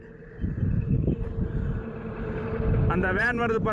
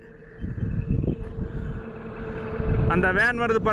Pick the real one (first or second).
second